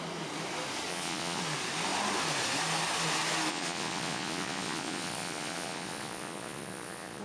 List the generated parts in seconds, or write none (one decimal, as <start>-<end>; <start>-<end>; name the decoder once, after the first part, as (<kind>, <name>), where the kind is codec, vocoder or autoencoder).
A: 0.9-1.4 (vocoder, Vocos); 3.5-7.2